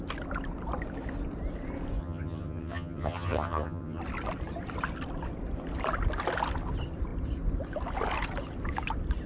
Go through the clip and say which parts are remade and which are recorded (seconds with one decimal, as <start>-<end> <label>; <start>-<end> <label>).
0.0-2.0 recorded; 2.0-4.0 remade; 4.0-9.3 recorded